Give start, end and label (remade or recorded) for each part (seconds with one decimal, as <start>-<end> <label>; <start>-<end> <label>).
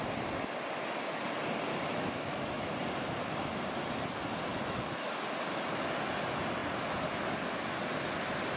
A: 0.0-1.7 recorded; 1.7-2.7 remade; 2.7-4.5 recorded; 4.5-5.1 remade; 5.1-8.6 recorded